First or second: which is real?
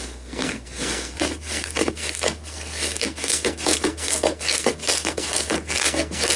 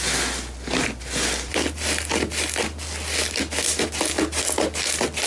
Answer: second